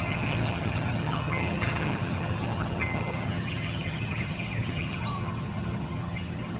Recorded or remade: remade